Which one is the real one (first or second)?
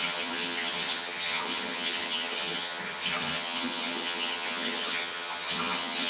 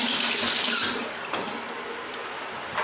second